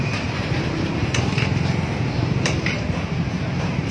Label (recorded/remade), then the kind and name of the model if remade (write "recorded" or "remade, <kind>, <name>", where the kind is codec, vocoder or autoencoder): remade, vocoder, BigVGAN v2